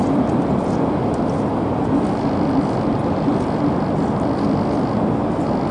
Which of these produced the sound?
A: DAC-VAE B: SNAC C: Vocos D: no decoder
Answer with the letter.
D